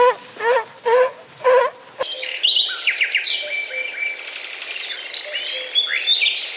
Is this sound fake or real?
real